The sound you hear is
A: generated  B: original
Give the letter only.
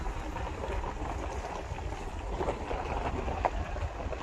B